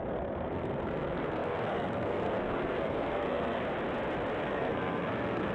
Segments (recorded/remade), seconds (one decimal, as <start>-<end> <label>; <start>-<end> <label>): 0.0-3.6 remade; 3.6-4.4 recorded; 4.4-5.5 remade